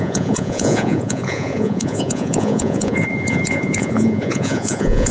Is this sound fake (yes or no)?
yes